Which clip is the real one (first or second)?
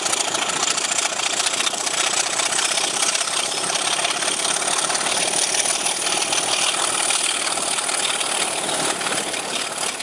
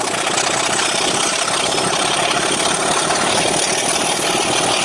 second